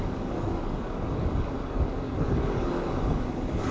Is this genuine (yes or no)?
no